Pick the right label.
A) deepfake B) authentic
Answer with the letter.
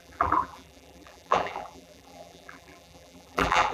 A